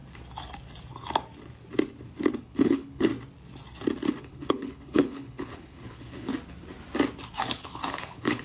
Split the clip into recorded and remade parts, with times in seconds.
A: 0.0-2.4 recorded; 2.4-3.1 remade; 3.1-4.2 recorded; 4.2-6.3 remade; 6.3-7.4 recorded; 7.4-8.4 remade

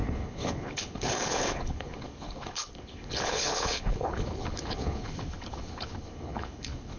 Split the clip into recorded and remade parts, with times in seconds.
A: 0.0-7.0 remade